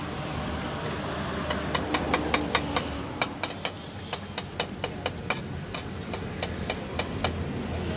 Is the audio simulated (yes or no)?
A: no